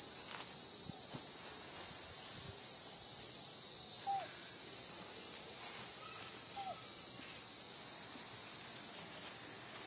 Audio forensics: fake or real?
real